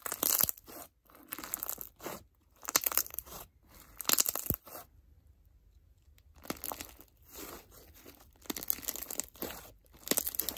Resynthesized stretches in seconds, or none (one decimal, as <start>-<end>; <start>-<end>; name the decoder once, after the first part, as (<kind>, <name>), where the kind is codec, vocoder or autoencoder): 2.4-3.6 (vocoder, BigVGAN v2)